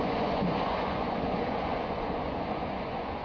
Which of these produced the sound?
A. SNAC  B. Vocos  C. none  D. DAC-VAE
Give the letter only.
B